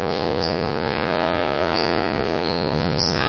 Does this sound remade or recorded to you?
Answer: remade